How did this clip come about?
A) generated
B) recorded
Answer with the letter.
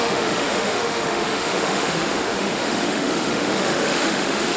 A